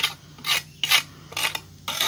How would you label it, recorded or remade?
recorded